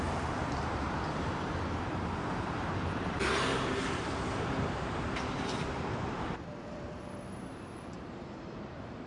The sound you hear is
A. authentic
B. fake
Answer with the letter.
B